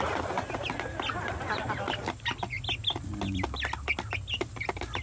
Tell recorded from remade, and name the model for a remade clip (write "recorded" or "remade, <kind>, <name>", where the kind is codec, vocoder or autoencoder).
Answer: recorded